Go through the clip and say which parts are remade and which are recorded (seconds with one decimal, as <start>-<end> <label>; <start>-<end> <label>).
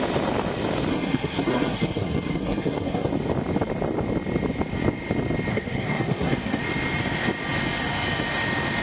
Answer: 0.0-0.9 recorded; 0.9-3.1 remade; 3.1-5.5 recorded; 5.5-6.6 remade; 6.6-8.8 recorded